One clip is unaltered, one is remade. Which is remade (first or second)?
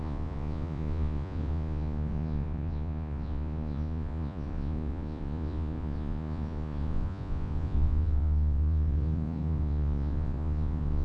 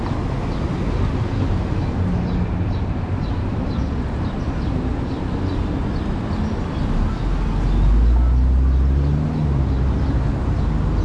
first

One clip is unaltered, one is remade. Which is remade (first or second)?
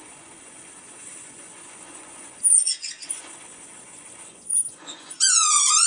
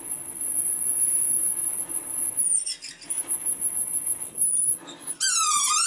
first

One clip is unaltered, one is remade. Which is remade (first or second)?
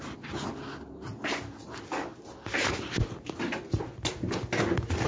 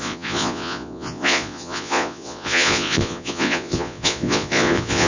second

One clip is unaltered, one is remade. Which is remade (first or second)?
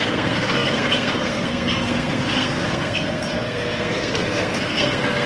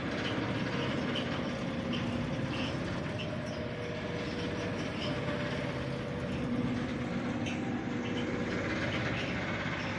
first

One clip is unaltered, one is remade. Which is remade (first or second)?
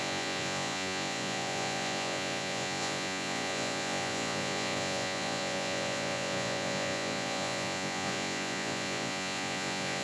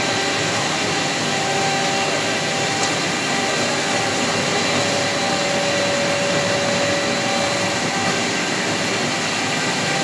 first